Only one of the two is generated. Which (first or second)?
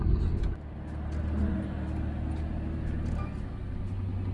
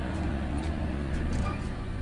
second